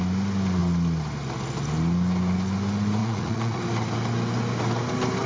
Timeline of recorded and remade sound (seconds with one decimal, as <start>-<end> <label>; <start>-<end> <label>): 0.0-3.0 recorded; 3.0-3.6 remade; 3.6-5.3 recorded